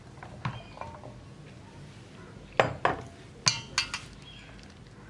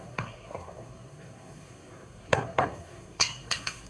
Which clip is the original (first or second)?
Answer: first